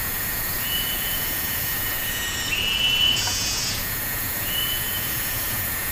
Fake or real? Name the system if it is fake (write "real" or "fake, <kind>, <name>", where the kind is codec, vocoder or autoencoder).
fake, vocoder, Vocos